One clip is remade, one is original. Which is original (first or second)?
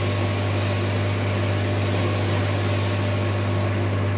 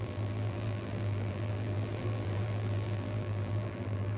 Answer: first